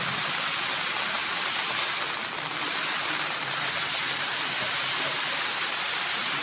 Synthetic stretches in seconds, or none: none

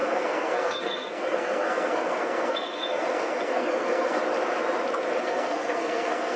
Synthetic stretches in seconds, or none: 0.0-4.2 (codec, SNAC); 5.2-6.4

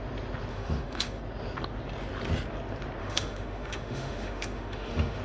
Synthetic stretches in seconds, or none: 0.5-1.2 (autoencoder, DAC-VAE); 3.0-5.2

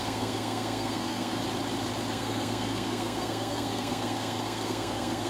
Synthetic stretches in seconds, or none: 0.0-1.4 (codec, SNAC); 2.1-5.3

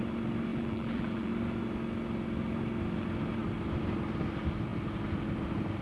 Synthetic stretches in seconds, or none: 0.5-1.3 (vocoder, BigVGAN v2)